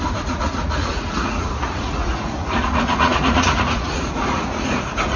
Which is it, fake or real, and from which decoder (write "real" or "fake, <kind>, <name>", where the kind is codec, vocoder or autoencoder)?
fake, vocoder, Vocos